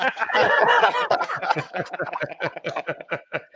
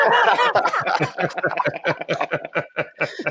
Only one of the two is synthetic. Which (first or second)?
first